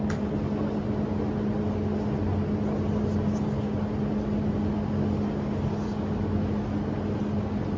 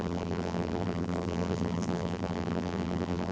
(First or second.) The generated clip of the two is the second